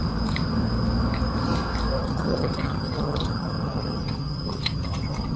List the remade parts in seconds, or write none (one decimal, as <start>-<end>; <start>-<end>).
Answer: 2.0-5.4